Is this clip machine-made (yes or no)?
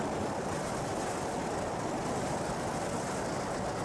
no